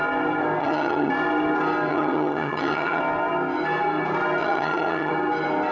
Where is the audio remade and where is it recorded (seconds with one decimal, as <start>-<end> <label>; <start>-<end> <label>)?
0.0-0.6 recorded; 0.6-1.1 remade; 1.1-1.9 recorded; 1.9-3.0 remade; 3.0-4.4 recorded; 4.4-5.1 remade; 5.1-5.7 recorded